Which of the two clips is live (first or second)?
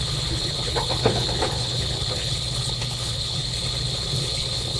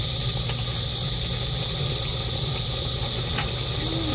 second